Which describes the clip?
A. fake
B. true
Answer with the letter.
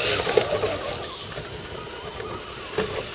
B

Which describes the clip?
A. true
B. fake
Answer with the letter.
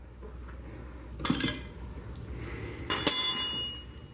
A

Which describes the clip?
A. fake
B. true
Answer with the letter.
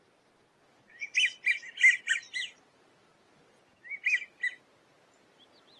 B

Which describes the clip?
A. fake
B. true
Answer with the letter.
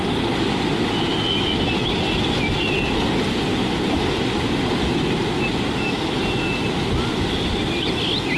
B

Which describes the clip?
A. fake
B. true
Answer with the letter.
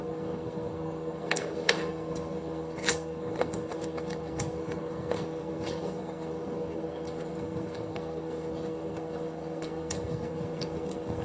A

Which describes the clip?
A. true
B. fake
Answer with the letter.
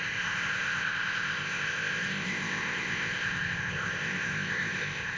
B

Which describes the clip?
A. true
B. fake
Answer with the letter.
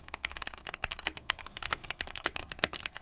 B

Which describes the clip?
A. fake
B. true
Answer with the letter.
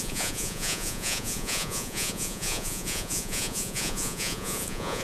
A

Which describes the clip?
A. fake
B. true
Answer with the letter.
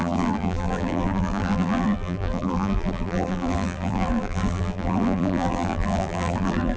A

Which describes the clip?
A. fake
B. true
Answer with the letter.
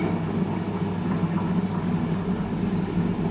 B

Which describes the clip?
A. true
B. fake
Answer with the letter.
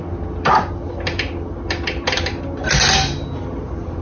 A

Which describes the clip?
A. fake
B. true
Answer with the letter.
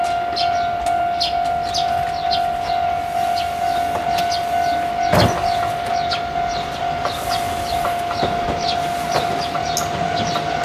B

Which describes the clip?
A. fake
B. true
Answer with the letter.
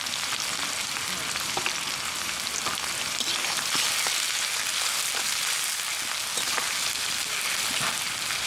B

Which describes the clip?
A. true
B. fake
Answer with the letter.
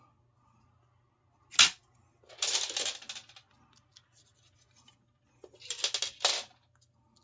A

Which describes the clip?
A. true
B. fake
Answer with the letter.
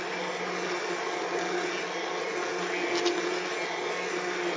A